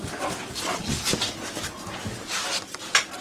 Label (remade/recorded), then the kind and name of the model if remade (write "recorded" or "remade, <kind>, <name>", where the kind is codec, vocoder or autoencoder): recorded